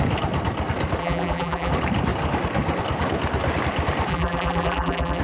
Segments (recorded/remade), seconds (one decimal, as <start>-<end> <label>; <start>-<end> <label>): 0.0-1.0 recorded; 1.0-1.7 remade; 1.7-4.1 recorded; 4.1-5.2 remade